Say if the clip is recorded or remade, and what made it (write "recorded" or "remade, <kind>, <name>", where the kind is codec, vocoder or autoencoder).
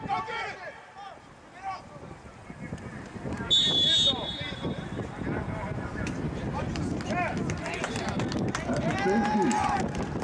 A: recorded